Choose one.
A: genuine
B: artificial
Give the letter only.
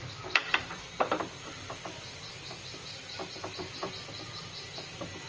B